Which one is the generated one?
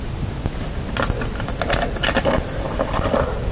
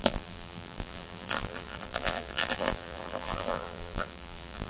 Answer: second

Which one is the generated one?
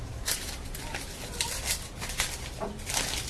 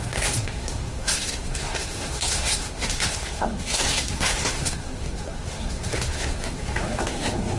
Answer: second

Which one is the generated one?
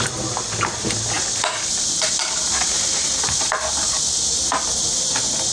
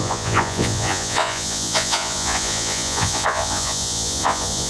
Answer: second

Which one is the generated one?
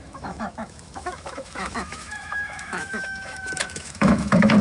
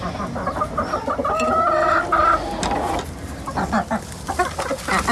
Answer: first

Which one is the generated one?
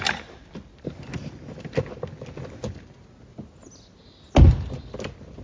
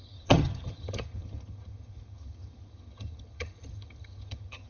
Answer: second